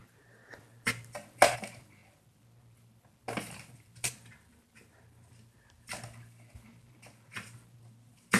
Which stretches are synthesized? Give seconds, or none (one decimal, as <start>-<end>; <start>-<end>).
none